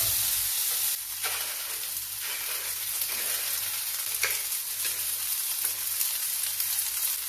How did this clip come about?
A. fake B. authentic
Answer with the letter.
B